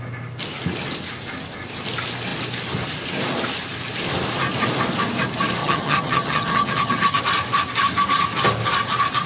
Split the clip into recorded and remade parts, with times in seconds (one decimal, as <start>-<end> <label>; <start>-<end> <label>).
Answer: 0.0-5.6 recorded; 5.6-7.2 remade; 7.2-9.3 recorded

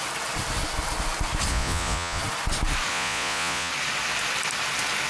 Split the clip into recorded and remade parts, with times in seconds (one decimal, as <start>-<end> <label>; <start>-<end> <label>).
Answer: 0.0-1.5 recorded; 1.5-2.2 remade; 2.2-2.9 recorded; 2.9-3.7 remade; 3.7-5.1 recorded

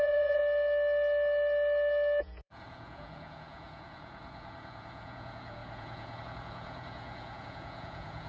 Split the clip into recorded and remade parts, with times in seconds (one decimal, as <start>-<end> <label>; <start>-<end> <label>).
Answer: 0.0-0.4 remade; 0.4-2.2 recorded; 2.2-8.3 remade

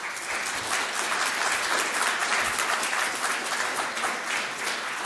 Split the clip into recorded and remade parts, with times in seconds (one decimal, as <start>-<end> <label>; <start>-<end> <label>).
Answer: 0.0-5.1 recorded